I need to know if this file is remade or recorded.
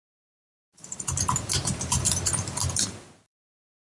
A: remade